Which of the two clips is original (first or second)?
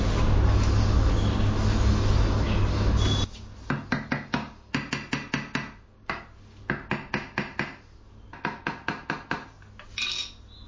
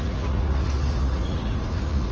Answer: first